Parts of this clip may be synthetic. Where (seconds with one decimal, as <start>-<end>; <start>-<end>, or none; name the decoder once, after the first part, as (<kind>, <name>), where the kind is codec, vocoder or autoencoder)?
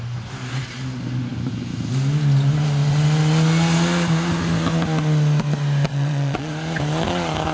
5.9-6.5 (vocoder, Vocos)